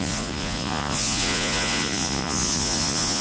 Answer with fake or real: fake